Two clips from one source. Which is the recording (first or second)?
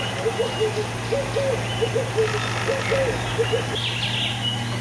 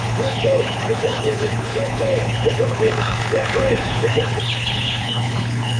first